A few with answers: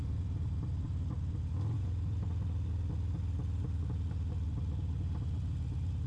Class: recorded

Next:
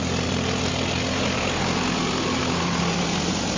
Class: recorded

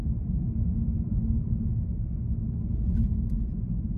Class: recorded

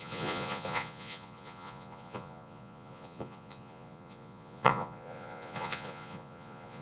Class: remade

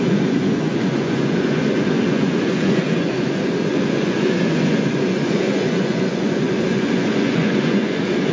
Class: remade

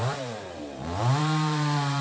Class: remade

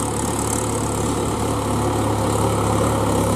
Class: recorded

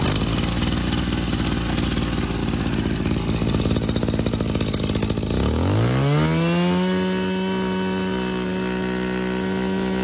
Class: recorded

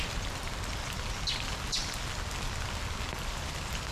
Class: recorded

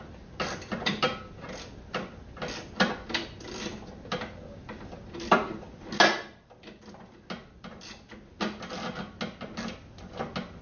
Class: recorded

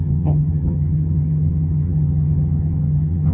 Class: remade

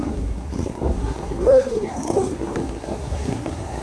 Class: remade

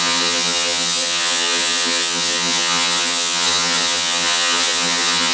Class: remade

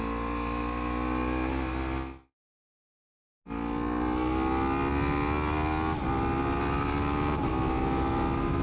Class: recorded